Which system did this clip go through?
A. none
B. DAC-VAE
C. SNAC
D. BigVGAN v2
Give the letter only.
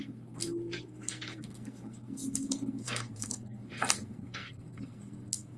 C